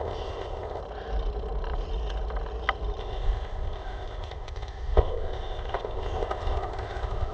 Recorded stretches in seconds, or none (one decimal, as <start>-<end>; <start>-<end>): 0.8-3.0